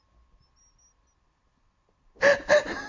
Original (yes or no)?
yes